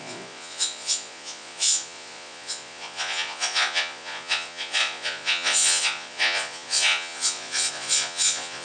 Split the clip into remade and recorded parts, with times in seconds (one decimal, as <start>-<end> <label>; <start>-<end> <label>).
0.0-8.6 remade